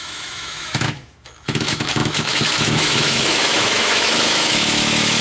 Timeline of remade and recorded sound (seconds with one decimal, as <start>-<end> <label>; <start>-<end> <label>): 0.0-5.2 remade